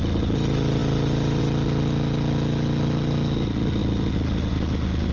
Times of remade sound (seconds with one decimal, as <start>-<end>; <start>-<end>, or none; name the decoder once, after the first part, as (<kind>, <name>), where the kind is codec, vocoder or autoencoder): none